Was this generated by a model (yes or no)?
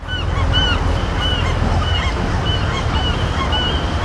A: no